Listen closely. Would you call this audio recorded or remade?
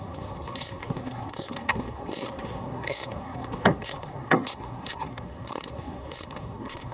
remade